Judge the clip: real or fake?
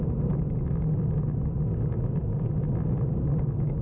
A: real